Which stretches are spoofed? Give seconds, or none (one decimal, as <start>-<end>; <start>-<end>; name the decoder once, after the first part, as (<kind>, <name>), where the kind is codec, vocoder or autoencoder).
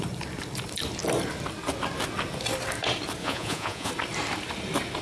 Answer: 3.2-3.9 (vocoder, Vocos)